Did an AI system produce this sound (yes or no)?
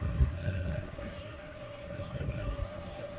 yes